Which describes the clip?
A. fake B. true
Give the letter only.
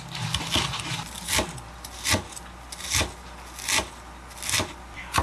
B